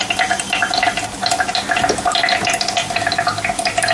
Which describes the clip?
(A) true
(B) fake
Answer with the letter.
A